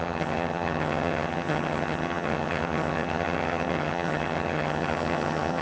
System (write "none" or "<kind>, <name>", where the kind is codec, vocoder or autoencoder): vocoder, HiFi-GAN